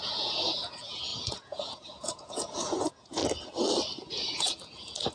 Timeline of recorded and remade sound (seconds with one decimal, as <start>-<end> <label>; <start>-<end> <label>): 0.0-3.2 remade; 3.2-4.1 recorded; 4.1-5.1 remade